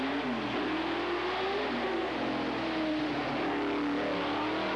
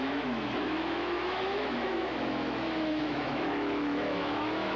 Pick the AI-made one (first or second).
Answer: second